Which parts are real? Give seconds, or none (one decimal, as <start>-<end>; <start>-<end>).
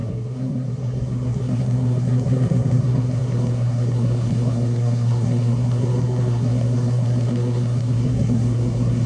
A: none